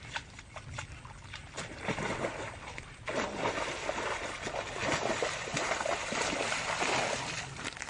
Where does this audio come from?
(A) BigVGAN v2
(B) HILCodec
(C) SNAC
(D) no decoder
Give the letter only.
D